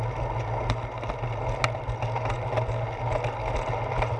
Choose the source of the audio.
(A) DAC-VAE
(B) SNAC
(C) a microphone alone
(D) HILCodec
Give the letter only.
C